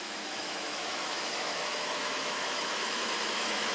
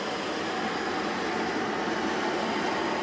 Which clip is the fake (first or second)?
first